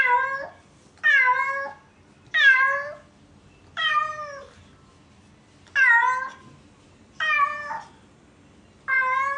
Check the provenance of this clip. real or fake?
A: real